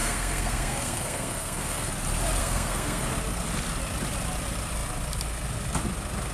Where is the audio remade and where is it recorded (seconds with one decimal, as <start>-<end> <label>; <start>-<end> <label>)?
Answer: 0.0-1.9 remade; 1.9-2.4 recorded; 2.4-3.0 remade; 3.0-6.3 recorded